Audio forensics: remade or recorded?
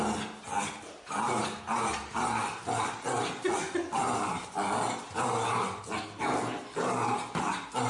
recorded